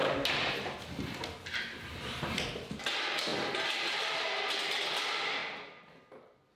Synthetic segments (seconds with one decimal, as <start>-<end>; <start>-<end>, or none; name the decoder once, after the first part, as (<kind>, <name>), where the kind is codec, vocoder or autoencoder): none